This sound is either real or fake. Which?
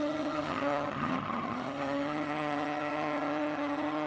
fake